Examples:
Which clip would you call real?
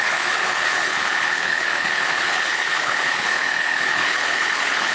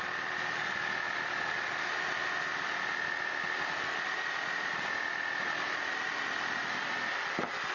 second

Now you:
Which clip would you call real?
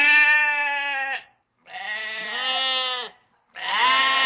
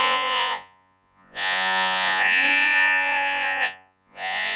first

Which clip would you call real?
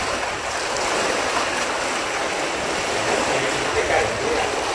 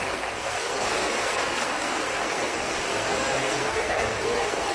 first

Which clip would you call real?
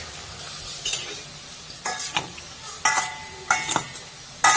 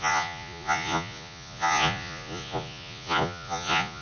first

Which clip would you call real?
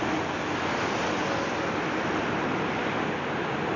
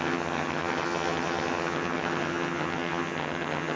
first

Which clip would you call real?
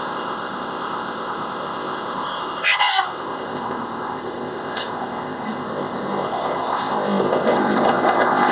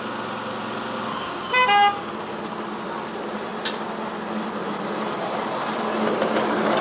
second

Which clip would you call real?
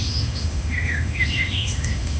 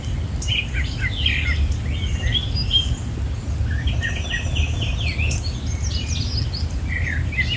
second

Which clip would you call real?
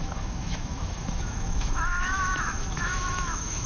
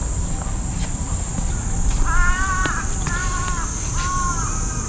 second